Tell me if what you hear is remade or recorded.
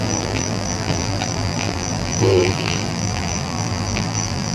remade